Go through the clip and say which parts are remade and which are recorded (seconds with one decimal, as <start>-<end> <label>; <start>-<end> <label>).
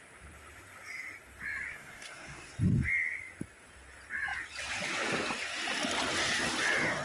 0.0-1.7 recorded; 1.7-2.5 remade; 2.5-7.0 recorded